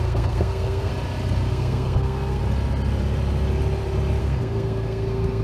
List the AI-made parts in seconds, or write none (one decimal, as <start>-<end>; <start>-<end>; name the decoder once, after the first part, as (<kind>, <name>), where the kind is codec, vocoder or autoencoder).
0.0-0.9 (codec, SNAC); 1.5-2.4; 4.2-5.4